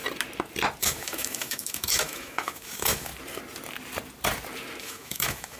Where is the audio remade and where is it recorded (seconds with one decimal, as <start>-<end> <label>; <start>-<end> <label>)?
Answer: 0.0-0.8 recorded; 0.8-3.1 remade; 3.1-4.8 recorded; 4.8-5.6 remade